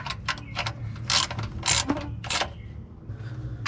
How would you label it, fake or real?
real